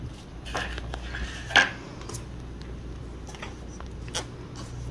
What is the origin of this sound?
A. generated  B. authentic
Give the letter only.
B